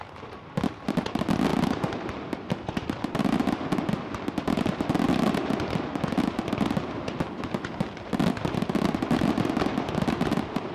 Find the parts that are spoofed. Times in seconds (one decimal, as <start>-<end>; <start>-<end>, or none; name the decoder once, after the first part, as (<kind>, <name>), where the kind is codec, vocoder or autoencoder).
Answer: none